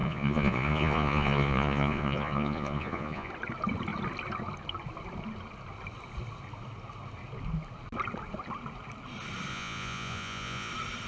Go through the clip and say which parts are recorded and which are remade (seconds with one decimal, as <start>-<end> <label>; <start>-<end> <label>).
0.0-3.3 remade; 3.3-9.5 recorded; 9.5-10.7 remade; 10.7-11.1 recorded